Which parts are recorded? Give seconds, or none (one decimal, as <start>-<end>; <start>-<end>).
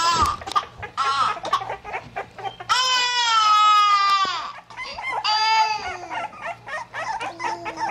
0.0-7.9